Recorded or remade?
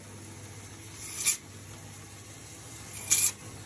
recorded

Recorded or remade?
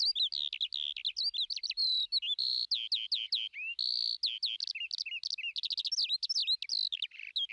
recorded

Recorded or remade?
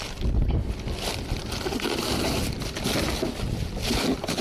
recorded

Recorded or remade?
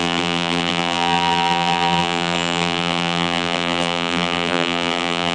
remade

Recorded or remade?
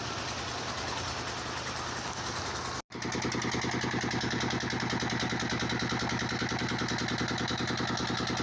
recorded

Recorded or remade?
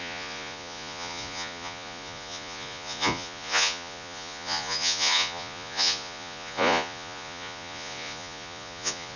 remade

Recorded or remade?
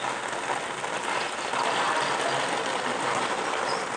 recorded